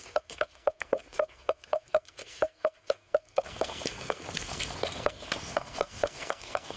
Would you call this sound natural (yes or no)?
no